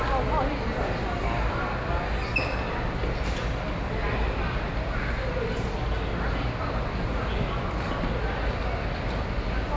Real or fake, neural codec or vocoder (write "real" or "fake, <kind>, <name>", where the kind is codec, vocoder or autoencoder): real